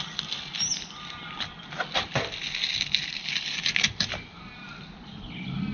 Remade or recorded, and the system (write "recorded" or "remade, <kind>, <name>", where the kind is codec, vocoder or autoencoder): recorded